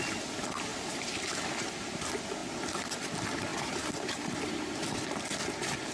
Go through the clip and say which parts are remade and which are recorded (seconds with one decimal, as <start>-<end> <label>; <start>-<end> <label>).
0.0-0.7 recorded; 0.7-1.2 remade; 1.2-3.5 recorded; 3.5-4.4 remade; 4.4-5.9 recorded